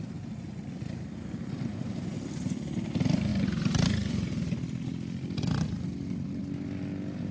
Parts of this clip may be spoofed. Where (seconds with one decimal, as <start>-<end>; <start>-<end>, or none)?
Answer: none